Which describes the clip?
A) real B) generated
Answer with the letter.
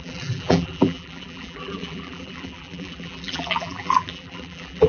B